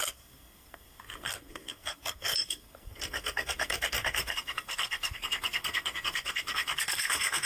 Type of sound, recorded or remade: remade